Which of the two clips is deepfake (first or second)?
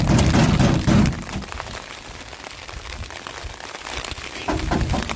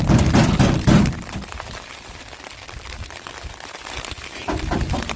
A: second